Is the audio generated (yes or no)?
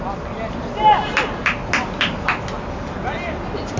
no